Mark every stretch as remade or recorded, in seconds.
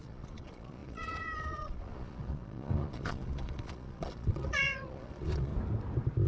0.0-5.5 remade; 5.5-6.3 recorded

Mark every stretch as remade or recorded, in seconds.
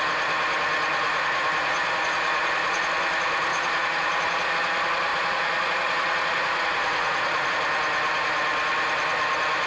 0.0-0.9 recorded; 0.9-2.8 remade; 2.8-3.5 recorded; 3.5-4.5 remade; 4.5-5.1 recorded; 5.1-7.5 remade; 7.5-9.7 recorded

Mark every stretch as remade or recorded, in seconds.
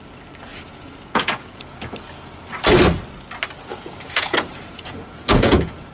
0.0-0.5 recorded; 0.5-1.9 remade; 1.9-3.7 recorded; 3.7-5.9 remade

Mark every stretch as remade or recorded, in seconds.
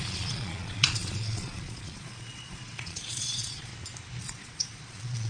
0.0-3.7 remade; 3.7-4.2 recorded; 4.2-5.3 remade